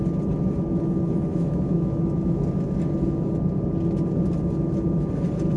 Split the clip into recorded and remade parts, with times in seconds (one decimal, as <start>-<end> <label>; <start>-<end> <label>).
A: 0.0-1.3 recorded; 1.3-2.4 remade; 2.4-5.6 recorded